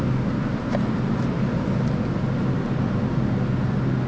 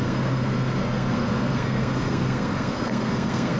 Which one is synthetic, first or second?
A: second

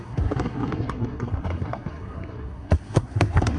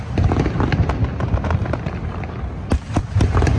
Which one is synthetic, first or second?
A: first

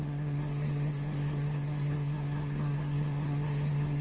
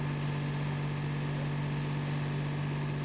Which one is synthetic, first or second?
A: first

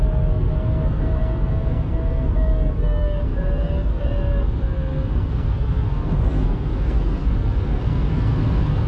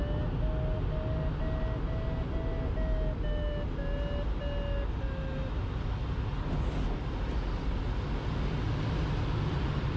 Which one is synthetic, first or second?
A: first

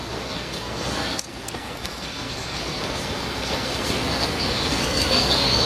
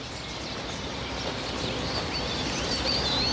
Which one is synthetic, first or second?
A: first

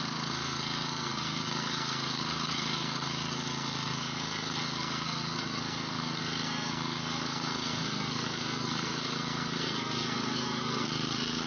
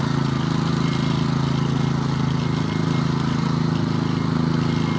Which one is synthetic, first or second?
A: first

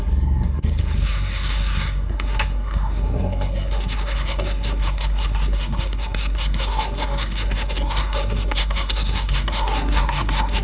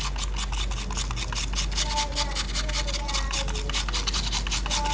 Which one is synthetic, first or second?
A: first